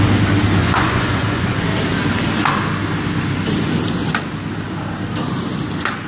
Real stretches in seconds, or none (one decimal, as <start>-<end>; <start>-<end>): 0.0-0.6; 1.6-6.1